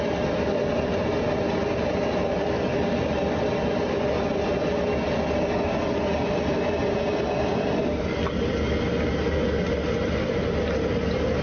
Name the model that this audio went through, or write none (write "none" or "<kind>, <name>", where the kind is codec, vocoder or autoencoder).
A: none